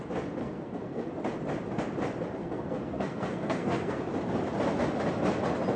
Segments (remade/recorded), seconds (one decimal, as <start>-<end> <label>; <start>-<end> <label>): 0.0-0.4 recorded; 0.4-1.1 remade; 1.1-2.4 recorded; 2.4-4.0 remade; 4.0-5.8 recorded